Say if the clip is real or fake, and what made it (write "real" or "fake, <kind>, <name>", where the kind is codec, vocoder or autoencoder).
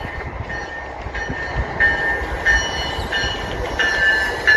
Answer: real